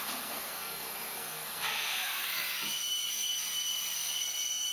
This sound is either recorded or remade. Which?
remade